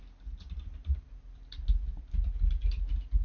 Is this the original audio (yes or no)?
yes